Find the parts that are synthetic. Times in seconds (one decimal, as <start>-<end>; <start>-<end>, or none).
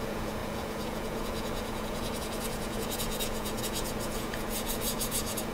0.0-5.5